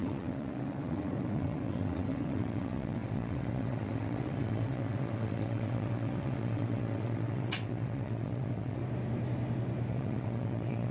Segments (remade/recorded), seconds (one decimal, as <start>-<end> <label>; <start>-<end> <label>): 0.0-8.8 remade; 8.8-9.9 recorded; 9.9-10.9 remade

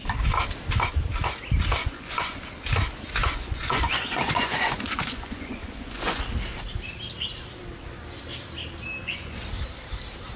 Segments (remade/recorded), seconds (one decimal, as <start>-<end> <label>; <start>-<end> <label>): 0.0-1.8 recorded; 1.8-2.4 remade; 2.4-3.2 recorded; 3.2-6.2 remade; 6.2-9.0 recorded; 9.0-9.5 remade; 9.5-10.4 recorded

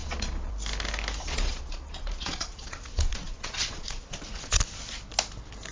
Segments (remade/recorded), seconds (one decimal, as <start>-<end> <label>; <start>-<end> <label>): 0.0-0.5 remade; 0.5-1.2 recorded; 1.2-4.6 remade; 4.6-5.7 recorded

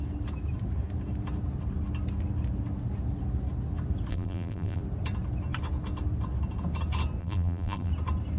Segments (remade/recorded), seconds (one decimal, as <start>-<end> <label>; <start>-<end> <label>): 0.0-4.1 recorded; 4.1-4.8 remade; 4.8-7.2 recorded; 7.2-7.9 remade; 7.9-8.4 recorded

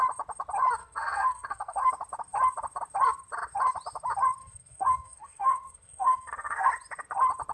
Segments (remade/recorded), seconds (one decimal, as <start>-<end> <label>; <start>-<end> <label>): 0.0-0.8 recorded; 0.8-1.9 remade; 1.9-4.4 recorded; 4.4-6.7 remade; 6.7-7.5 recorded